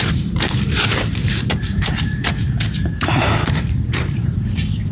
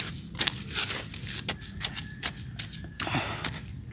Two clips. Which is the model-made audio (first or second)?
first